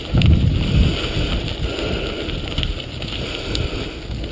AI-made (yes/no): no